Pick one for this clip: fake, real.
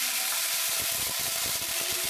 real